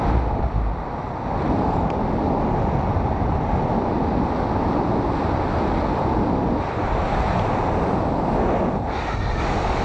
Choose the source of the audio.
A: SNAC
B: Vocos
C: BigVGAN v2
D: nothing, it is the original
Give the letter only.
D